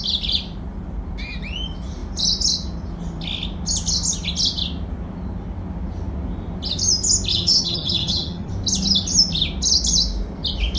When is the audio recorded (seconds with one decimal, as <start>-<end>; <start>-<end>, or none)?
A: 0.0-7.3; 8.5-10.8